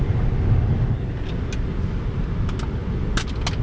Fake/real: real